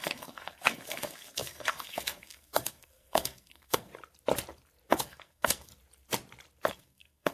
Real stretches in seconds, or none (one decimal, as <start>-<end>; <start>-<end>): 3.9-4.9; 5.7-6.7